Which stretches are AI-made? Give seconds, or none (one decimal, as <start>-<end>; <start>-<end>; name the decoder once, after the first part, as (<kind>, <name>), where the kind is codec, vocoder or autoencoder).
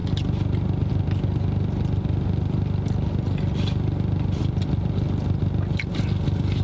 none